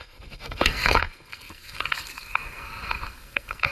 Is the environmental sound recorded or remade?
remade